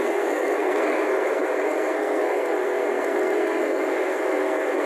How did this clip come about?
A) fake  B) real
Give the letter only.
A